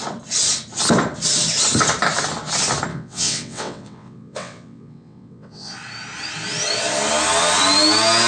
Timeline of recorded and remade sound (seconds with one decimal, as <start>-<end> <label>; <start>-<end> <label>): 0.0-2.9 recorded; 2.9-5.7 remade; 5.7-8.3 recorded